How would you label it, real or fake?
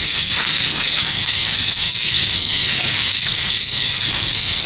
fake